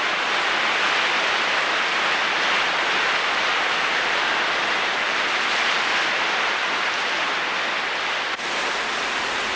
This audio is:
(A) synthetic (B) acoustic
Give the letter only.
B